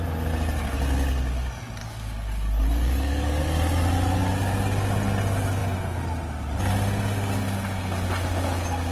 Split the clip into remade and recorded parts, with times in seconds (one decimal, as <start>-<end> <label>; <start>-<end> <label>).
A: 0.0-1.8 recorded; 1.8-3.4 remade; 3.4-8.9 recorded